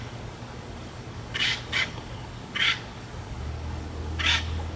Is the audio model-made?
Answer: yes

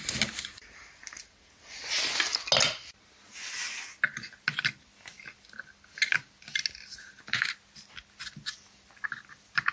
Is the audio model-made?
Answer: no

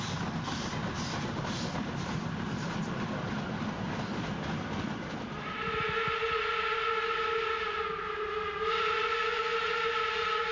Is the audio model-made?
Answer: no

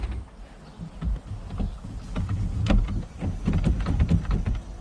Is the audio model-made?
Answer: no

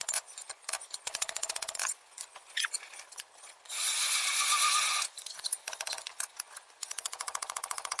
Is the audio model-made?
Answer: yes